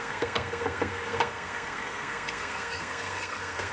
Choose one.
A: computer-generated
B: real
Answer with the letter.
A